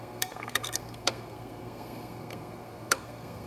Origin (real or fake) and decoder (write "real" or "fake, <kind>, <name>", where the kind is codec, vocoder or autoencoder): fake, codec, SNAC